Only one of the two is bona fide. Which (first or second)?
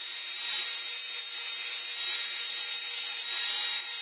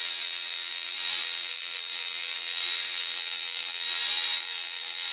first